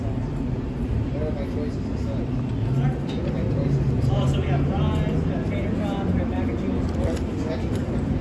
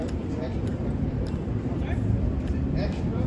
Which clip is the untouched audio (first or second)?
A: first